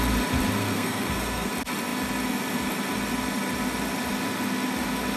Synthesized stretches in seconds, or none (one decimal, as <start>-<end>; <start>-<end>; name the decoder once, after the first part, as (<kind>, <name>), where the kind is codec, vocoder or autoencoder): 0.6-1.5 (codec, SNAC)